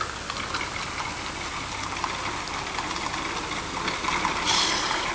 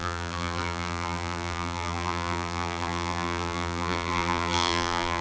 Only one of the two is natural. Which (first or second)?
first